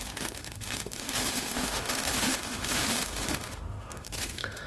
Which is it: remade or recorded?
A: remade